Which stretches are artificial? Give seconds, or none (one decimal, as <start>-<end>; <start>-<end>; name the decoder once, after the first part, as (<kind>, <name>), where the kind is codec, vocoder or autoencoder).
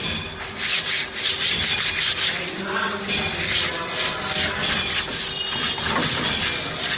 none